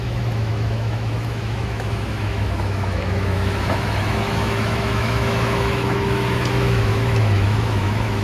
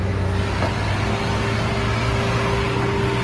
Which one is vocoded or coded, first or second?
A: first